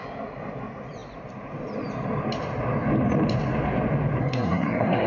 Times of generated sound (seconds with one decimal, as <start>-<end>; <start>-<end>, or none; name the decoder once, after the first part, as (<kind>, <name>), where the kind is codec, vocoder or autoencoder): 4.2-5.1 (codec, SNAC)